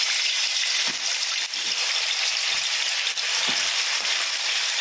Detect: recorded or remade recorded